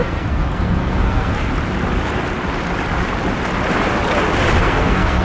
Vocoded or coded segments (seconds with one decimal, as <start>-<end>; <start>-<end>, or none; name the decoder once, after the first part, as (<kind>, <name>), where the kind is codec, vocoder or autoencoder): 0.0-1.5 (codec, SNAC); 4.6-5.2